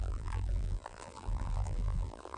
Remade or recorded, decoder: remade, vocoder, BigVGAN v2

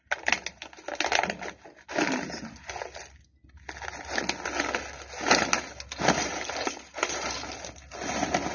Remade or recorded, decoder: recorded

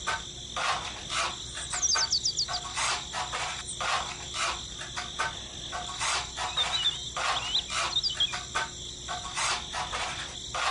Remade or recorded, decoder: recorded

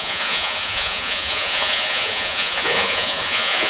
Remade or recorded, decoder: remade, vocoder, Vocos